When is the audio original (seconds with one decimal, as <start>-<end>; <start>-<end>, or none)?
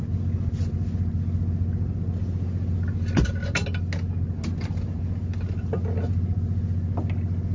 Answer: 0.0-7.5